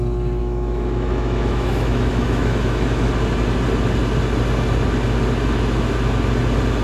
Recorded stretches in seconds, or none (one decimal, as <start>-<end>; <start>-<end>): 0.0-0.4; 3.1-6.8